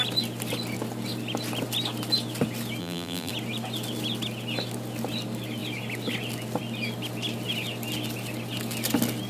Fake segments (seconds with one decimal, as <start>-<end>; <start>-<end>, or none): 2.8-3.3